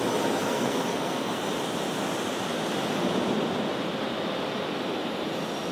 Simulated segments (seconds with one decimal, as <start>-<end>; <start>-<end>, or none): 0.4-1.5